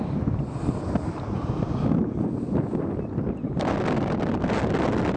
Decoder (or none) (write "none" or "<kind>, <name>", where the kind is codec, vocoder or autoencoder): none